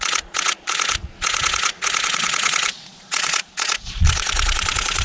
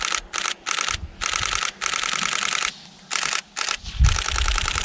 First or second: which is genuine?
second